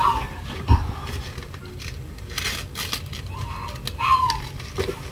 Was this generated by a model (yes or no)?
no